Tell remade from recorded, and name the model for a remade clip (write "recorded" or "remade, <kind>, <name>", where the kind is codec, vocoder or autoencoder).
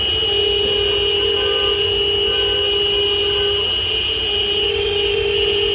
recorded